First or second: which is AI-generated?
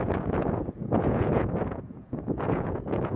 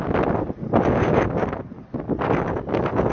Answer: first